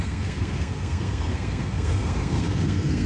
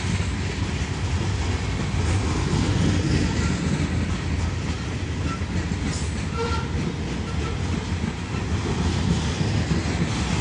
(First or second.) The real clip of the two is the second